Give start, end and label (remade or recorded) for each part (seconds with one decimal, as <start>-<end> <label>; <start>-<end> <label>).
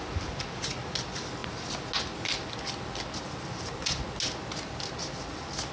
0.0-5.7 recorded